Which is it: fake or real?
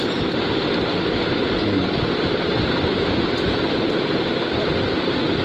real